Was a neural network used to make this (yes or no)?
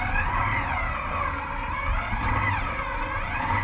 no